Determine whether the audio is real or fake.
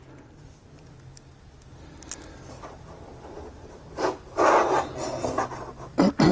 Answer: real